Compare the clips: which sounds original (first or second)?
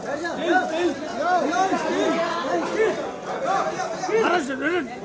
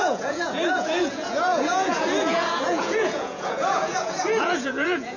first